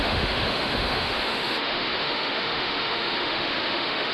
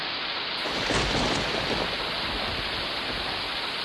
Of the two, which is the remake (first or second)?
first